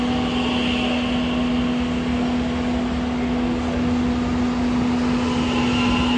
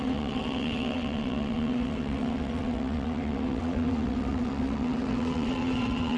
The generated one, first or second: second